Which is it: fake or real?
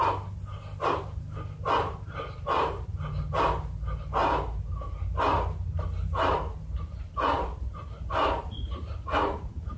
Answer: real